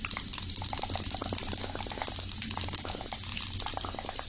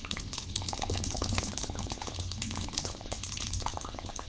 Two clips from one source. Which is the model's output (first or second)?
second